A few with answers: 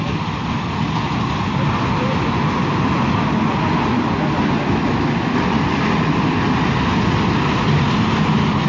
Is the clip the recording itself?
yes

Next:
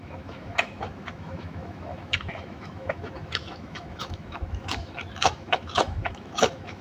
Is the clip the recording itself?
no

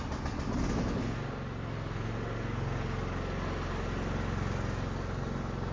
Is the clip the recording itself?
yes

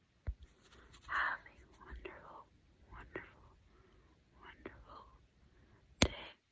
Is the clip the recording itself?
yes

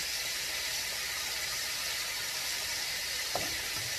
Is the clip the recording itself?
yes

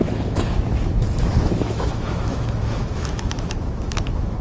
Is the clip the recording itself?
no